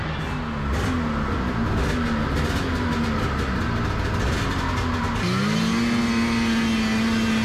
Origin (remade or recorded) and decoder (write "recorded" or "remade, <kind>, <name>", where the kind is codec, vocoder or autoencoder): recorded